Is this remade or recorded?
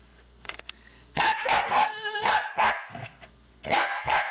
remade